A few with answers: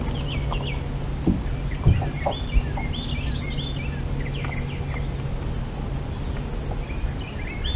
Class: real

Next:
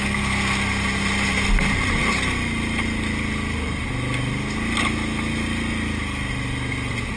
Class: real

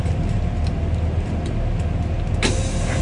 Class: real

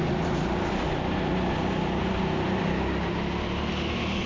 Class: real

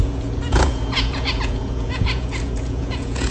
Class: fake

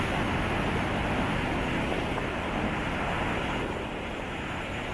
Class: real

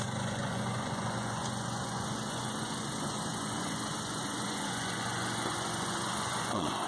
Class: fake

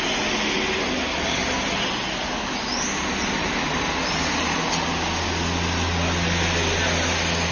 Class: real